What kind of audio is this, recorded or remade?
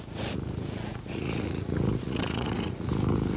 remade